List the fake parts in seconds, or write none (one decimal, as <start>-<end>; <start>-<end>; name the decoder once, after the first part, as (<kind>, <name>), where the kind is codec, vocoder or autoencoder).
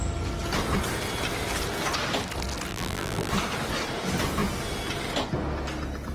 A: 2.7-3.3 (vocoder, BigVGAN v2)